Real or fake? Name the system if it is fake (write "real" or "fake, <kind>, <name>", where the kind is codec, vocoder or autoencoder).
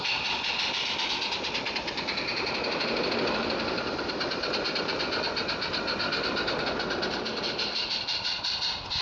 real